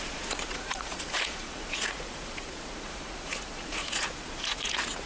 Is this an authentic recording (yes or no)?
no